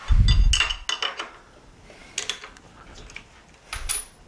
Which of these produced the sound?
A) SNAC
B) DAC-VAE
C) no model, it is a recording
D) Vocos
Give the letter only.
C